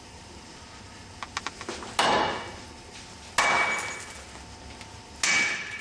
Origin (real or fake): real